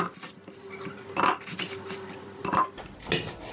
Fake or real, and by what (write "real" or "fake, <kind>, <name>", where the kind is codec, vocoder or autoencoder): real